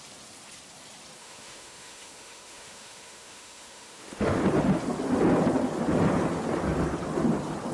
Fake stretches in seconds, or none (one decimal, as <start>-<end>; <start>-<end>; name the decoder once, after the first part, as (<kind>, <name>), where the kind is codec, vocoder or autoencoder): 1.2-4.4 (autoencoder, DAC-VAE)